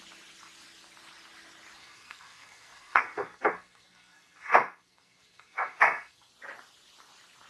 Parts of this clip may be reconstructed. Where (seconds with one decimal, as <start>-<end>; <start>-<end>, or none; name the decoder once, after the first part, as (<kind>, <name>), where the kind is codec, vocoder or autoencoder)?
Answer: 1.8-6.3 (codec, SNAC)